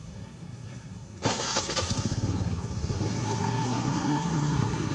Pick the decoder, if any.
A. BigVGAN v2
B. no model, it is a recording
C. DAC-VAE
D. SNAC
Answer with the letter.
D